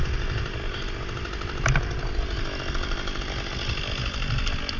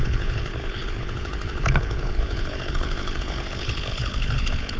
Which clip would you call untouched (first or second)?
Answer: first